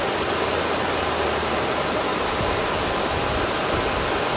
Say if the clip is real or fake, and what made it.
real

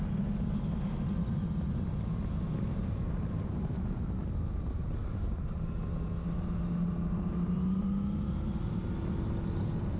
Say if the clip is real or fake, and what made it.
real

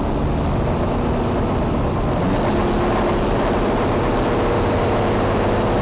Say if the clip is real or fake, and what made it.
real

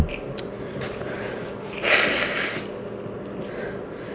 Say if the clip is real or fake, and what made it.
real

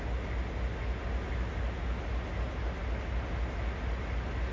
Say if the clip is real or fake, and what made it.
real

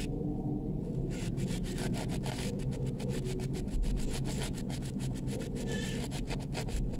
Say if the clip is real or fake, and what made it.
real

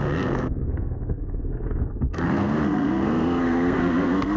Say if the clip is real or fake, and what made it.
fake, codec, SNAC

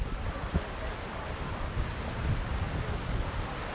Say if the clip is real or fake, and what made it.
real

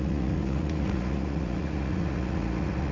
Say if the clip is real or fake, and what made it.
fake, vocoder, Vocos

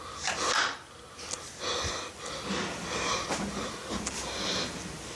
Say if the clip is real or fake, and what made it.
real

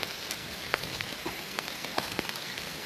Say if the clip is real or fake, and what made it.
fake, codec, SNAC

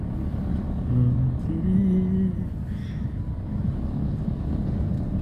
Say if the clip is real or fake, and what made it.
real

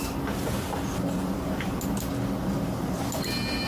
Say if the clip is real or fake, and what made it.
real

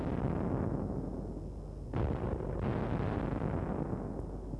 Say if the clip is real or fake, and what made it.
real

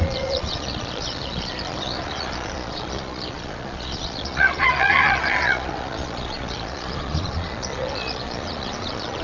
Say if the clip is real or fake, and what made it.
fake, vocoder, Vocos